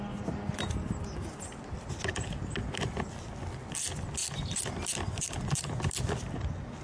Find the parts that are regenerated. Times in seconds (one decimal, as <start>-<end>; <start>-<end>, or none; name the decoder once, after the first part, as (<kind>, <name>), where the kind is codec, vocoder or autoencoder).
none